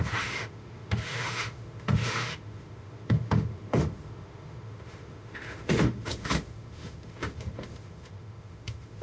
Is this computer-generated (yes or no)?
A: yes